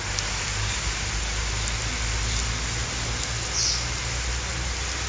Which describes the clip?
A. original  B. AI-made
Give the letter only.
A